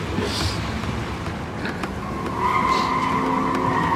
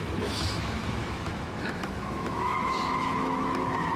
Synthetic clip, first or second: second